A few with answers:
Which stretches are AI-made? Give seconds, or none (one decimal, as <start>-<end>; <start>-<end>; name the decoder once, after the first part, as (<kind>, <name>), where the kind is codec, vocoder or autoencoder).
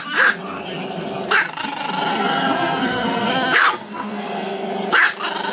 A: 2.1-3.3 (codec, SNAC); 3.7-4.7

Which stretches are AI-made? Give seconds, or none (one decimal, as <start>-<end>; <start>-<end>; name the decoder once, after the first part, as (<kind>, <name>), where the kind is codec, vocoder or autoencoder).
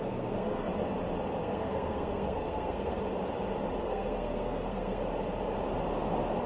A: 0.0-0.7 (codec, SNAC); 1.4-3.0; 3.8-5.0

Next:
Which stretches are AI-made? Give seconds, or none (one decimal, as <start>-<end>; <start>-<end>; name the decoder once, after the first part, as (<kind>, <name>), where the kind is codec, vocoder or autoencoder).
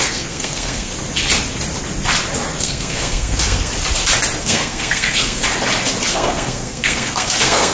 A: 0.0-0.9 (codec, SNAC); 2.6-3.7; 4.4-5.4; 6.1-7.7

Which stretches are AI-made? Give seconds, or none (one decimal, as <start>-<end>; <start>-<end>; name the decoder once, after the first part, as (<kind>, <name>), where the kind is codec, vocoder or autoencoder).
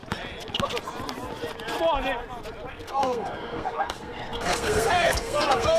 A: 2.7-5.8 (codec, SNAC)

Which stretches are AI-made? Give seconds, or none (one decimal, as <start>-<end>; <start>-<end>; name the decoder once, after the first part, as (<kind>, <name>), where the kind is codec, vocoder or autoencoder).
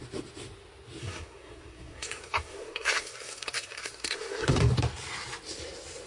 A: 1.0-4.7 (codec, SNAC)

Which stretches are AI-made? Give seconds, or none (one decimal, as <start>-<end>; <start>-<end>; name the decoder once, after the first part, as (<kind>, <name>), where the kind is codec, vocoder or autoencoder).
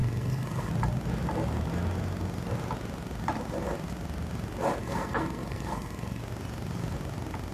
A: 0.0-0.7 (codec, SNAC); 4.8-6.2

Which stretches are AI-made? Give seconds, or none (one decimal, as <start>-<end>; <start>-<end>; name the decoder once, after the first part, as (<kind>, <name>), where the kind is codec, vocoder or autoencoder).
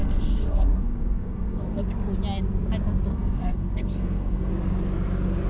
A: 0.0-1.8 (codec, SNAC); 3.1-4.5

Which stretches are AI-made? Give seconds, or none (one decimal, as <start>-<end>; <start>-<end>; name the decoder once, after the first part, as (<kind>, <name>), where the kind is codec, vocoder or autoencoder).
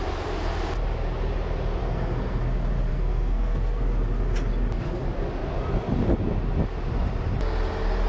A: 1.8-2.4 (codec, SNAC); 2.9-3.8